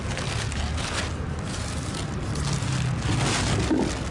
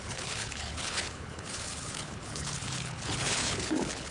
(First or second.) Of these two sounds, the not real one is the second